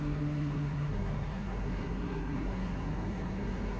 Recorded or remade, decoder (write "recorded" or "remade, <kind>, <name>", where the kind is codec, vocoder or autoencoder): remade, codec, SNAC